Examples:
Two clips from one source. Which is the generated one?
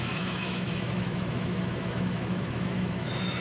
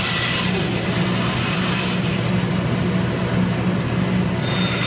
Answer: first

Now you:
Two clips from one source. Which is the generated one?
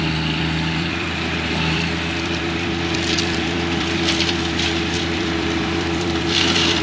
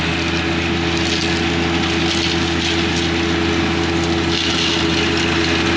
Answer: first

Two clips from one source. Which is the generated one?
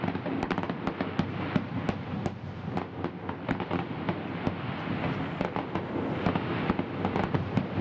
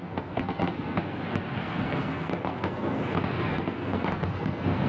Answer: second